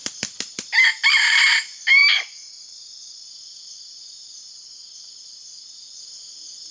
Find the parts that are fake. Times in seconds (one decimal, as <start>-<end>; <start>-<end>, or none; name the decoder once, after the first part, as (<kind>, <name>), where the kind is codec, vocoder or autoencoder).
none